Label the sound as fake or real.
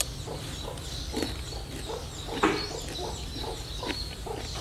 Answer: fake